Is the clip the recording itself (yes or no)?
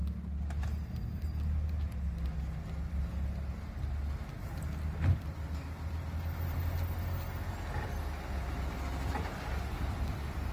yes